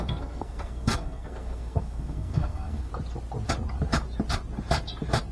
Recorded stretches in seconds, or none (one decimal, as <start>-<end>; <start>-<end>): 2.9-5.3